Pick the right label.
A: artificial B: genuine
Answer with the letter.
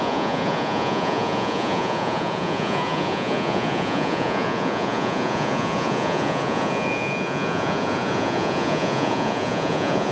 A